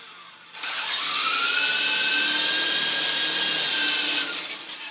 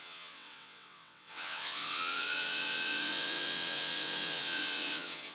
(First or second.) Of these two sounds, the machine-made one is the second